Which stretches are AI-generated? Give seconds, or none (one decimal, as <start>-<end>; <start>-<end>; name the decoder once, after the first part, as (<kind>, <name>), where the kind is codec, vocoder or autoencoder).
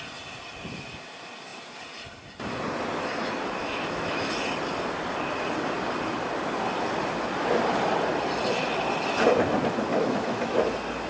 3.6-4.3 (autoencoder, DAC-VAE); 9.9-10.6